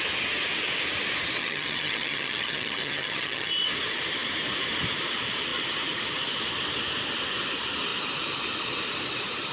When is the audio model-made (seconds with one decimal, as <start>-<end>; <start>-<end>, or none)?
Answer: 1.4-3.5